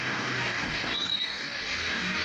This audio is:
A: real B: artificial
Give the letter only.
B